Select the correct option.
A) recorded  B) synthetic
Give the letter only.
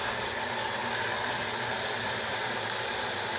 A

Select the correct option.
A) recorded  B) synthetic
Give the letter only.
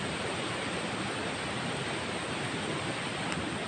A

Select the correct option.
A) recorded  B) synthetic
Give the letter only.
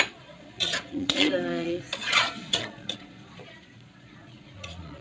B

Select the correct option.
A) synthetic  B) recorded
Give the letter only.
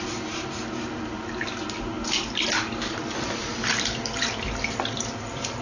B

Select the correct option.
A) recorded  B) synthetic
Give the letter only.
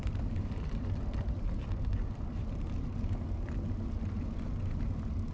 A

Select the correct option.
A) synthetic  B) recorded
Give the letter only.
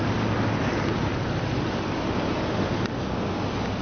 B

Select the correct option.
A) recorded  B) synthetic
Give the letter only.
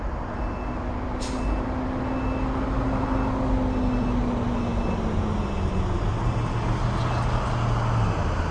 A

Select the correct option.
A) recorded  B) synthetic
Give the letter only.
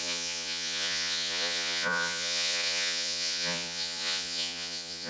B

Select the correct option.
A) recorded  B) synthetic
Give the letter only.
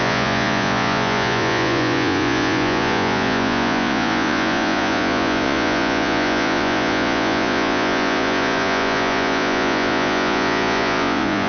B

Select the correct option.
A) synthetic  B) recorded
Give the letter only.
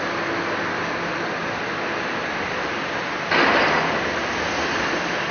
B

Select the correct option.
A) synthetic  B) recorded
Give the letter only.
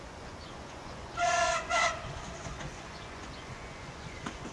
A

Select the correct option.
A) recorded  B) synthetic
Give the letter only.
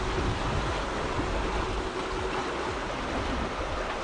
A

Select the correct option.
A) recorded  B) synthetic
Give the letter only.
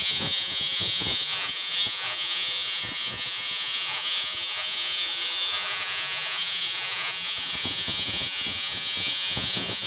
B